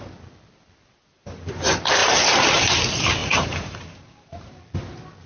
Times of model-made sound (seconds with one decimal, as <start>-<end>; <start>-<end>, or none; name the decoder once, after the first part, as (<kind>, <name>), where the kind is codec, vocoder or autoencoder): 2.0-2.8 (vocoder, BigVGAN v2); 3.2-4.6